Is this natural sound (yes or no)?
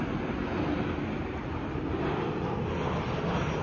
yes